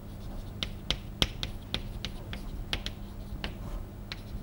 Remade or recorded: recorded